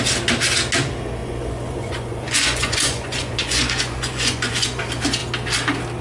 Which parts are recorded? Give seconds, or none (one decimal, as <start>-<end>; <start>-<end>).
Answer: 0.0-1.2; 4.8-6.0